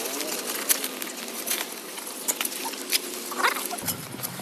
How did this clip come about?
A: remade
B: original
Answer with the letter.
A